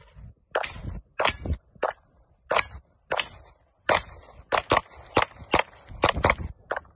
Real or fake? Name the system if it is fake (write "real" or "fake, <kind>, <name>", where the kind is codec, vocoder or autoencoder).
real